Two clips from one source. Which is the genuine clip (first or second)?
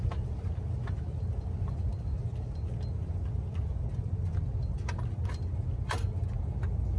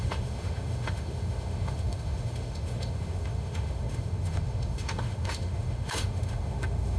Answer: first